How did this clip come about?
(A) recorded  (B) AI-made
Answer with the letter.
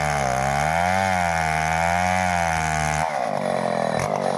A